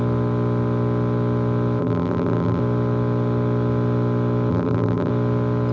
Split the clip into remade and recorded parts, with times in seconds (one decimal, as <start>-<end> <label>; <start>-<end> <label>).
0.0-1.8 recorded; 1.8-2.6 remade; 2.6-4.5 recorded; 4.5-5.1 remade; 5.1-5.7 recorded

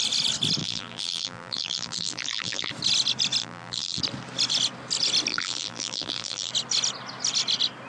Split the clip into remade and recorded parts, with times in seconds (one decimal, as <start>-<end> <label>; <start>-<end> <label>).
0.0-0.6 recorded; 0.6-2.7 remade; 2.7-3.4 recorded; 3.4-4.0 remade; 4.0-5.3 recorded; 5.3-6.5 remade; 6.5-7.9 recorded